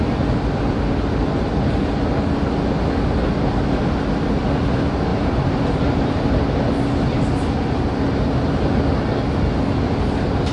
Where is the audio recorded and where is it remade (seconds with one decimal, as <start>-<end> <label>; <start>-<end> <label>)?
0.0-5.1 recorded; 5.1-6.3 remade; 6.3-10.5 recorded